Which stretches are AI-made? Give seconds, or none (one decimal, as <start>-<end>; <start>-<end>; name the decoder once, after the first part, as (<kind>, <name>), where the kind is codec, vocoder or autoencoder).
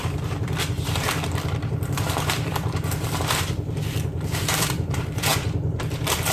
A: 0.0-6.3 (vocoder, BigVGAN v2)